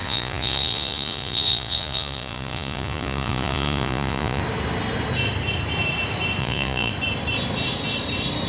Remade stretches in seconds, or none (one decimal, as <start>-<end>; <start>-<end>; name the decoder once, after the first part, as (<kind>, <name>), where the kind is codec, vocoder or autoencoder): 0.0-4.4 (vocoder, Vocos); 6.4-6.9